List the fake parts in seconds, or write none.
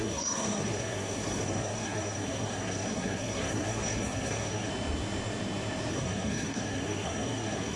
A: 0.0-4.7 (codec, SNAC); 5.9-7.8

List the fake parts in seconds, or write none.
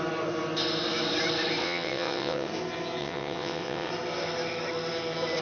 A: 1.6-2.5 (vocoder, WaveNeXt); 3.0-3.9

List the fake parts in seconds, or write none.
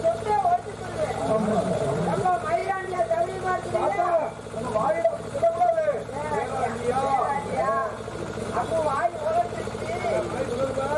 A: none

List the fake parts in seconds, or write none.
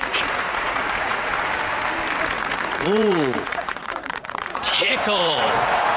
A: 0.0-1.3 (vocoder, Vocos); 2.2-6.0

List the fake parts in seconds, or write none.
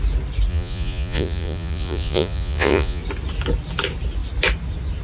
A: 0.5-3.0 (vocoder, Vocos)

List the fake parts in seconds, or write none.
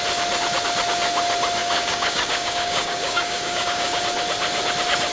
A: 1.6-4.0 (codec, DAC)